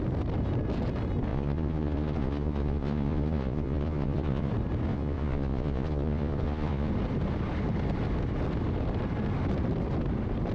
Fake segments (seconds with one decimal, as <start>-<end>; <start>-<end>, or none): 1.3-4.5; 4.9-6.9